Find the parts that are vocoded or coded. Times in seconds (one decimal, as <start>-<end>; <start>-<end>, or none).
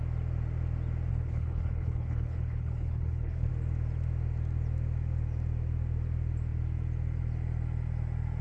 1.1-3.5